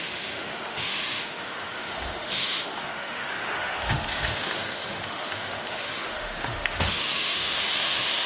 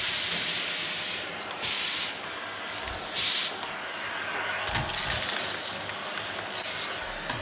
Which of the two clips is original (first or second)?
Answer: second